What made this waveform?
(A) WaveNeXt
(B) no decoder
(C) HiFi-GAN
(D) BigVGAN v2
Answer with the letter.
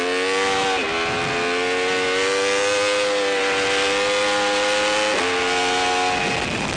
B